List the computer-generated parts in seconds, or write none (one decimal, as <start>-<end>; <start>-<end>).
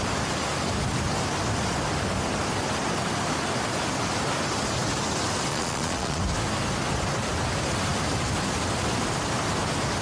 5.5-6.2